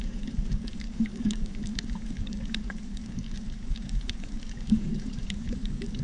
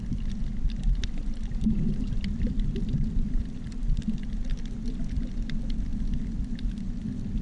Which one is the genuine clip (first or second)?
second